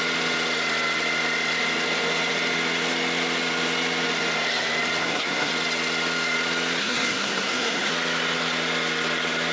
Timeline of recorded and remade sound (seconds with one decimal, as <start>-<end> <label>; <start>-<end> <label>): 0.0-5.0 recorded; 5.0-5.5 remade; 5.5-6.8 recorded; 6.8-7.9 remade; 7.9-9.5 recorded